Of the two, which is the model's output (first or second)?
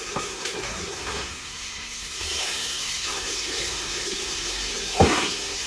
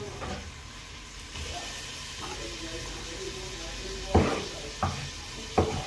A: first